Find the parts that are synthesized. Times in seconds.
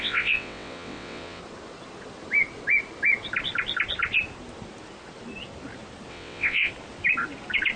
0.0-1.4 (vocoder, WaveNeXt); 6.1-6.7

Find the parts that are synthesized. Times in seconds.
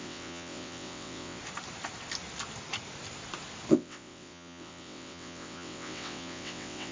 0.0-1.4 (vocoder, WaveNeXt); 3.7-6.9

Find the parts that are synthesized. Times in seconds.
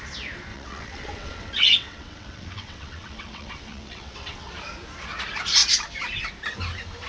0.5-4.5 (vocoder, WaveNeXt)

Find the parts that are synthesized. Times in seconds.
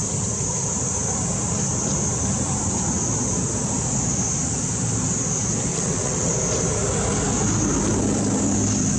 5.7-6.3 (vocoder, WaveNeXt)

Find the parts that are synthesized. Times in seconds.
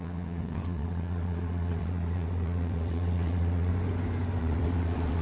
0.0-3.7 (vocoder, WaveNeXt); 4.4-5.2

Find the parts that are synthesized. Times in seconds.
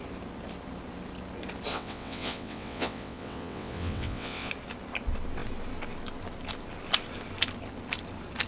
1.7-4.5 (vocoder, WaveNeXt)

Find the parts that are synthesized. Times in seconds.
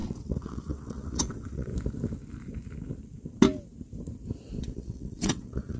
0.0-1.7 (vocoder, WaveNeXt); 4.6-5.8